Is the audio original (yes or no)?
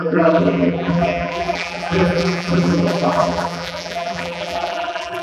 no